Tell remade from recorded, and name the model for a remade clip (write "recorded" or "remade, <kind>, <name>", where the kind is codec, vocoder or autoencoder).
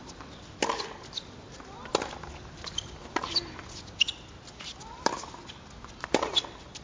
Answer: recorded